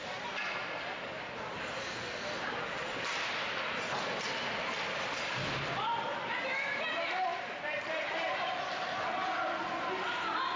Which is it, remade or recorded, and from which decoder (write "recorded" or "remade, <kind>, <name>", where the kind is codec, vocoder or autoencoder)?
recorded